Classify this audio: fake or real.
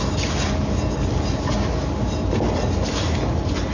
real